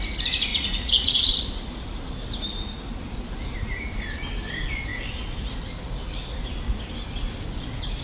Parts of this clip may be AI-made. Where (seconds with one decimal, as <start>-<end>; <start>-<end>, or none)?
0.5-1.2